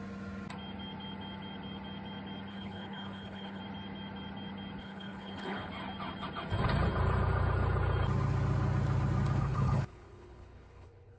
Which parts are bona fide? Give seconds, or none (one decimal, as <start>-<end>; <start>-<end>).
0.0-2.5; 3.6-4.8; 5.7-9.4